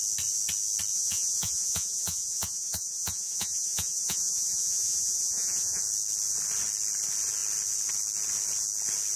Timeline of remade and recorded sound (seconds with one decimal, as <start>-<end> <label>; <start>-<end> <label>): 0.0-0.9 recorded; 0.9-5.8 remade; 5.8-9.2 recorded

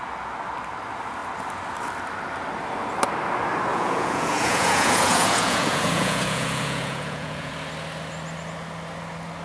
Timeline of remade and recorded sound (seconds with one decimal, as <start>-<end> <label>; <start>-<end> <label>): 0.0-3.7 recorded; 3.7-7.5 remade; 7.5-9.4 recorded